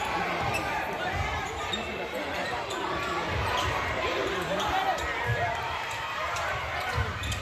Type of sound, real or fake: fake